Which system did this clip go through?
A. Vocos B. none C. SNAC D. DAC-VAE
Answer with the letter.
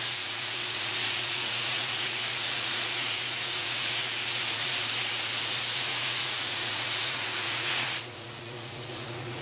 A